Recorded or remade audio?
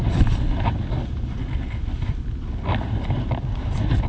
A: recorded